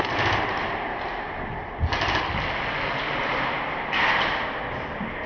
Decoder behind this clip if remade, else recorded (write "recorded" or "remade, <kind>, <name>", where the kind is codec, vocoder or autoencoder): recorded